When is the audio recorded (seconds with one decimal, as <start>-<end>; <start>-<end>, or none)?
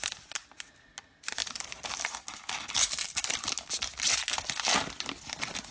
0.0-5.7